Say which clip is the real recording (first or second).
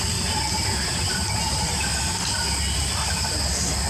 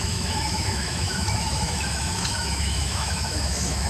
first